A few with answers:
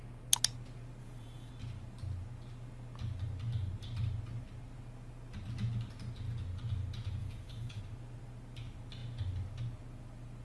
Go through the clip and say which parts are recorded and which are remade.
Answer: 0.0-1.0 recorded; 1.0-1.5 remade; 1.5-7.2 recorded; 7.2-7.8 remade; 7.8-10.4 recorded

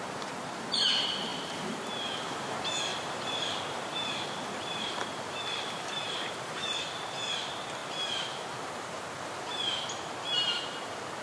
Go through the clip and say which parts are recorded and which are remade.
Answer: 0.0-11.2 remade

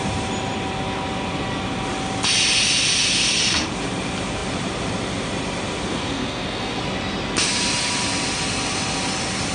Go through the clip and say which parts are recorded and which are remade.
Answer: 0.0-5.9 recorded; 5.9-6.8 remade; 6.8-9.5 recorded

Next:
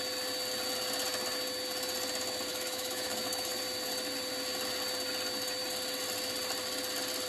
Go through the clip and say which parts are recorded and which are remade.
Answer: 0.0-2.5 recorded; 2.5-3.6 remade; 3.6-7.3 recorded

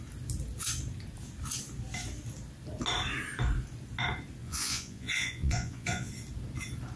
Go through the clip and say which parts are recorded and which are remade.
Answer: 0.0-4.4 recorded; 4.4-6.1 remade; 6.1-7.0 recorded